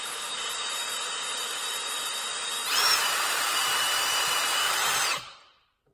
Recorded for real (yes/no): no